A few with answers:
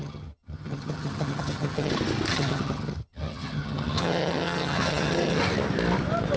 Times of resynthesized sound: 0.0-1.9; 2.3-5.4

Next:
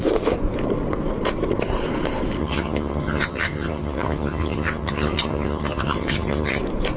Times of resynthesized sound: 2.4-6.6